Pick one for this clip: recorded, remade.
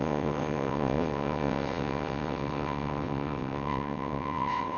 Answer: remade